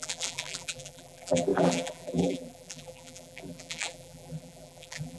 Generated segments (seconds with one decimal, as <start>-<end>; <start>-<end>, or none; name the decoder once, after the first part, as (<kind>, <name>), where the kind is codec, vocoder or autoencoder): 0.0-5.2 (vocoder, BigVGAN v2)